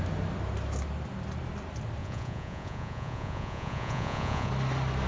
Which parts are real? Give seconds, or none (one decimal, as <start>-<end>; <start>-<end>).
0.0-2.0; 4.5-5.1